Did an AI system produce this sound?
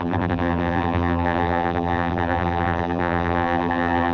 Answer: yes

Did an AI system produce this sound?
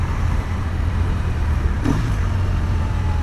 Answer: yes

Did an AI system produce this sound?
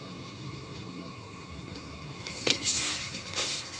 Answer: yes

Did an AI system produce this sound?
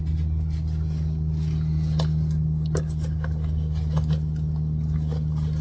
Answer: no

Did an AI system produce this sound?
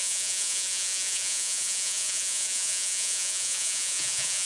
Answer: yes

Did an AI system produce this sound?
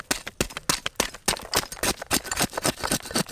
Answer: no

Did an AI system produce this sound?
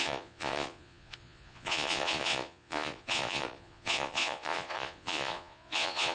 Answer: yes